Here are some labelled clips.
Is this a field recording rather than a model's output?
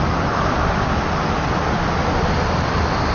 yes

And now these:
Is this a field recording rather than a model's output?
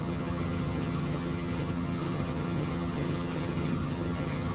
no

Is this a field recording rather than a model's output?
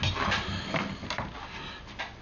yes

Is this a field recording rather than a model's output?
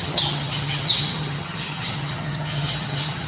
no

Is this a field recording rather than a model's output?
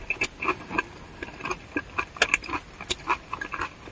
yes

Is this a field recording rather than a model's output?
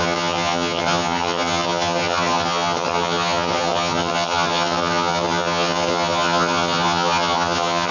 no